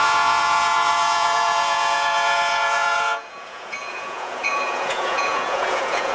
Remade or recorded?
remade